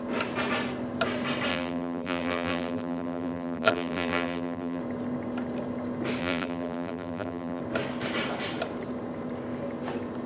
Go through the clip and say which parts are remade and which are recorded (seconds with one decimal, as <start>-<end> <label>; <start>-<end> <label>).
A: 0.0-1.5 recorded; 1.5-4.8 remade; 4.8-6.2 recorded; 6.2-7.6 remade; 7.6-10.3 recorded